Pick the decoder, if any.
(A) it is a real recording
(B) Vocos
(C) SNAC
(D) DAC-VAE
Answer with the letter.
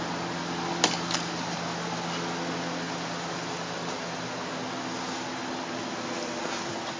A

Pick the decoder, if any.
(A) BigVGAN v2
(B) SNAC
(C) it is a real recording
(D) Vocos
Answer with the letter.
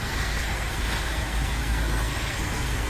B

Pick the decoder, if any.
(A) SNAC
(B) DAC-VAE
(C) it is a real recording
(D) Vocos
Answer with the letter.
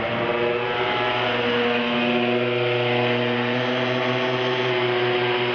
C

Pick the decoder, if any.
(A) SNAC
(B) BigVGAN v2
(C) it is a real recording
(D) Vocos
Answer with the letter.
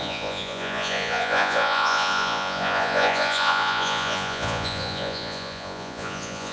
D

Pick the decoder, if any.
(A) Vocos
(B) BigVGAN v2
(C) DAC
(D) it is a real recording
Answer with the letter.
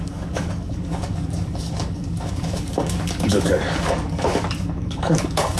C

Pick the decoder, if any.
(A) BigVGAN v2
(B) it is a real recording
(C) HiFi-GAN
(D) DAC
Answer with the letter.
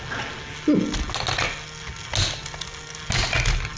B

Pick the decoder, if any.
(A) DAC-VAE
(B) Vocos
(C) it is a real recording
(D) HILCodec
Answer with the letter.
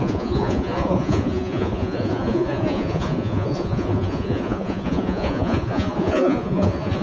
B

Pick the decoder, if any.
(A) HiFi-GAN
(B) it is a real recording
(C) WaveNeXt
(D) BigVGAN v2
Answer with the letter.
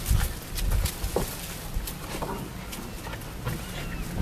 B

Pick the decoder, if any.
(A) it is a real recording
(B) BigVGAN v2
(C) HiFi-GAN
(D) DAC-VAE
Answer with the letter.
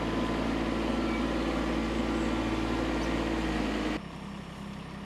A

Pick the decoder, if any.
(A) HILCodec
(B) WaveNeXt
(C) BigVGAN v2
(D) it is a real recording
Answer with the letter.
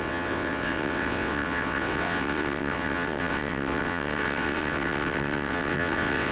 B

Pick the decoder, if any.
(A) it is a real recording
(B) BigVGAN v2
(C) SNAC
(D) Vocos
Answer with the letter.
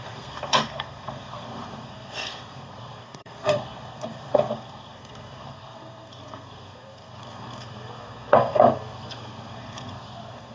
C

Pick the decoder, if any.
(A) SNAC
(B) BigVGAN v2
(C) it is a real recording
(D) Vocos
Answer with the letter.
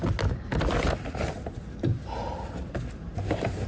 C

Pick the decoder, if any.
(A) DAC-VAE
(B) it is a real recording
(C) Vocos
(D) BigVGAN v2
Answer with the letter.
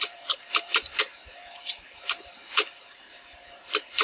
D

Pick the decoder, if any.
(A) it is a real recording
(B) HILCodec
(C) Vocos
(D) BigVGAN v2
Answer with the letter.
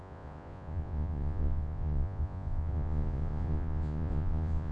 C